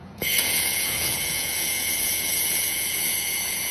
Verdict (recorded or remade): remade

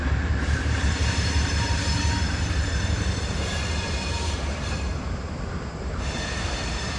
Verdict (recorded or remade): remade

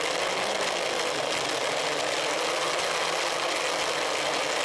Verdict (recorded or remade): recorded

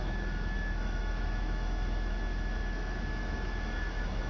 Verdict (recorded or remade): remade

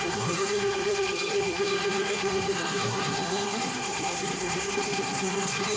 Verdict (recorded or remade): remade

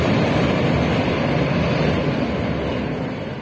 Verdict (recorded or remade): recorded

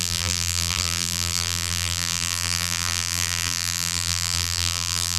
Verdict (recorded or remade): remade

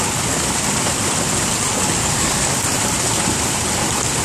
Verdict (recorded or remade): remade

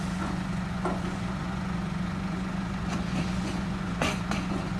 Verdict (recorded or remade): remade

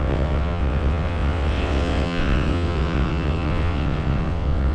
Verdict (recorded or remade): remade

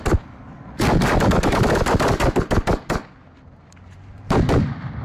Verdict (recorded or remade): recorded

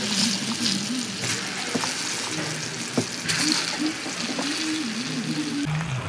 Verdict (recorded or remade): recorded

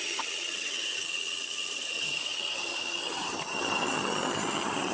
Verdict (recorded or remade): remade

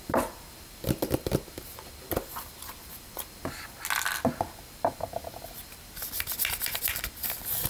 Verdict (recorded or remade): recorded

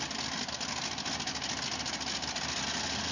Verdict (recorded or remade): recorded